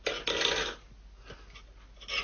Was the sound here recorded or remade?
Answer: recorded